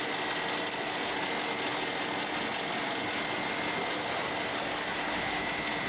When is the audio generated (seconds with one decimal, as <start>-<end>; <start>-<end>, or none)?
none